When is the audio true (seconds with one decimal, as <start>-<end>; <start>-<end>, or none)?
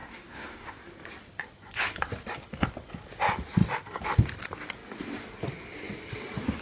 0.8-6.6